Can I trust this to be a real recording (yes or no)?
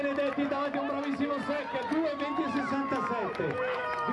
yes